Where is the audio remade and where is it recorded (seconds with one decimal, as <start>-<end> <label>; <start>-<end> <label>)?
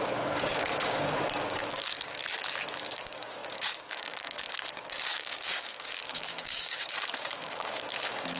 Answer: 0.0-2.2 remade; 2.2-2.8 recorded; 2.8-8.4 remade